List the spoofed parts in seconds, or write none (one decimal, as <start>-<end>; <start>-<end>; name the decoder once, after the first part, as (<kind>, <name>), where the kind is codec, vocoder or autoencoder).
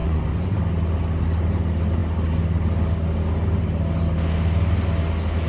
0.0-0.6 (vocoder, Vocos)